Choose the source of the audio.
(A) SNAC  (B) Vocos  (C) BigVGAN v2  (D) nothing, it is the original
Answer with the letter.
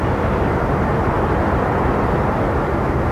D